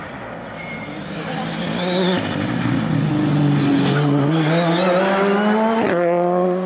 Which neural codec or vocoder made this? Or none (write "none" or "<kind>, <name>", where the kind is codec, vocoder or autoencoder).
none